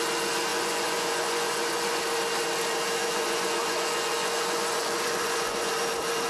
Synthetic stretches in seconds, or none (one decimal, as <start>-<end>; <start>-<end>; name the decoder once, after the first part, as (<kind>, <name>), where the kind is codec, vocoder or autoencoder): 0.5-2.0 (vocoder, Vocos); 3.0-5.7